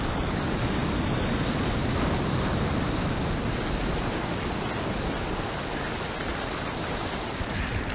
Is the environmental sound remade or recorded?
recorded